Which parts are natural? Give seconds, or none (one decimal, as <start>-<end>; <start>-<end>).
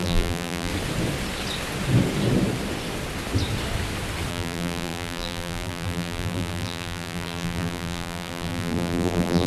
0.7-4.3